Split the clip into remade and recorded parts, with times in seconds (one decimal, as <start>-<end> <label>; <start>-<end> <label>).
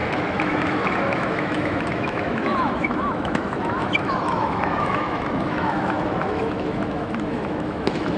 0.0-8.2 remade